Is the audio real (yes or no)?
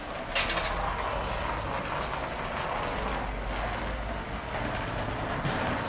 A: yes